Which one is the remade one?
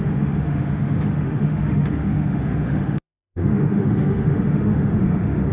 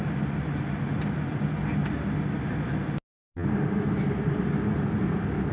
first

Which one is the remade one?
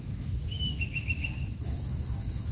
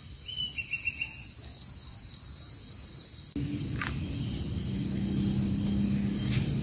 first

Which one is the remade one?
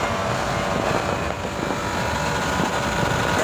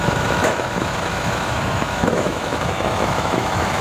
second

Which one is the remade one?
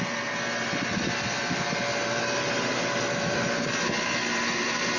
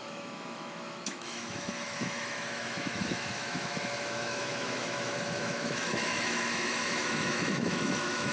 second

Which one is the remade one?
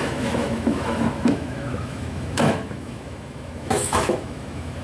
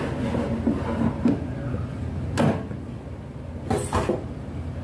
first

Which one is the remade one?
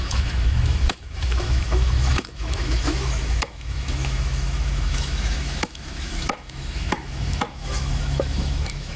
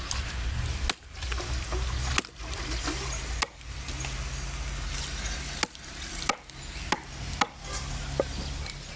first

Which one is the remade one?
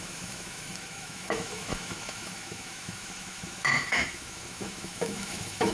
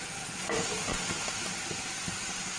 first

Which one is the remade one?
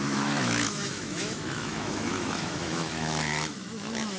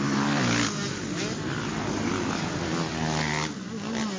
first